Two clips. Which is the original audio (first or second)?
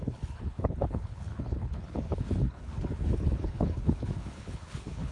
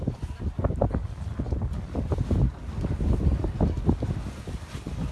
second